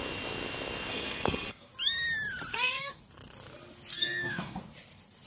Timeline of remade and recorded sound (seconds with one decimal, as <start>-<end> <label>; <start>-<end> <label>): 0.0-0.9 recorded; 0.9-1.7 remade; 1.7-2.5 recorded; 2.5-3.0 remade; 3.0-3.9 recorded; 3.9-4.6 remade; 4.6-5.3 recorded

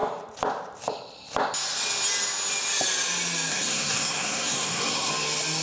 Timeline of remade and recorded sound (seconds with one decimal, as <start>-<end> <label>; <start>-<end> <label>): 0.0-3.5 recorded; 3.5-5.1 remade; 5.1-5.6 recorded

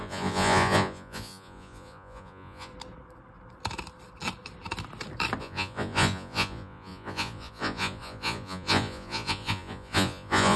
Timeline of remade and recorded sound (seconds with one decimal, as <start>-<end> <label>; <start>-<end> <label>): 0.0-2.7 remade; 2.7-5.4 recorded; 5.4-10.6 remade

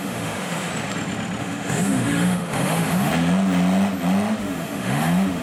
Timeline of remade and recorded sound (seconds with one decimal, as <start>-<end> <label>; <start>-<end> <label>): 0.0-0.7 remade; 0.7-1.4 recorded; 1.4-3.1 remade; 3.1-4.4 recorded; 4.4-5.4 remade

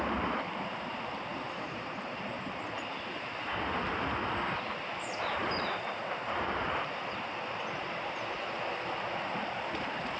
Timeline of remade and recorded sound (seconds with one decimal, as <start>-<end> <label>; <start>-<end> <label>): 0.0-10.2 recorded

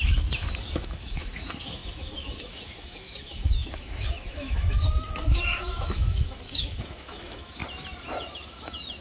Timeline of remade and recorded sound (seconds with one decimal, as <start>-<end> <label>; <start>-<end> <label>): 0.0-7.6 remade; 7.6-8.2 recorded; 8.2-9.0 remade